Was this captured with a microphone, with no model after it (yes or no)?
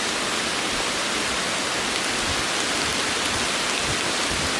yes